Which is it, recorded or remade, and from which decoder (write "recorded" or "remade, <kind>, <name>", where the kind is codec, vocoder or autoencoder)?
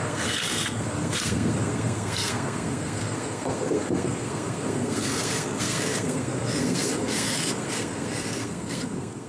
remade, codec, SNAC